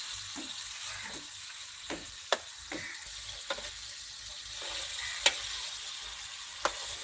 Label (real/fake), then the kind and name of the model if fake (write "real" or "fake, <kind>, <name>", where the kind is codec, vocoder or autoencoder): real